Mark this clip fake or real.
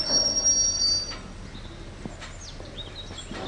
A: real